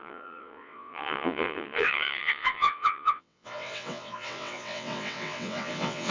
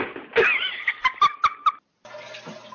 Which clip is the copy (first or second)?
first